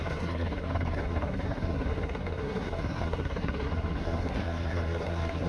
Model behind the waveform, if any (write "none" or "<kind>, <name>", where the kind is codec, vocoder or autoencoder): codec, SNAC